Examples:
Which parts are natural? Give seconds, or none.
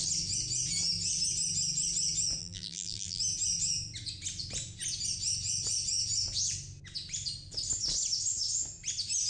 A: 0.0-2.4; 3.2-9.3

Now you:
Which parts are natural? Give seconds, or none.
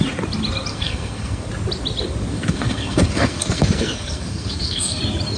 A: 0.0-0.7; 1.5-2.3; 5.0-5.4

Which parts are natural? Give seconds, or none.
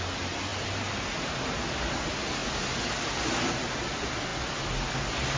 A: 0.0-5.4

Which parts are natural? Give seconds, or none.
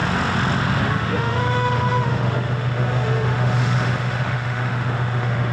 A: 0.0-0.8